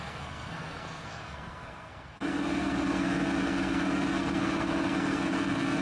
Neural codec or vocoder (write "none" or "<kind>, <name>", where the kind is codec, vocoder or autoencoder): codec, SNAC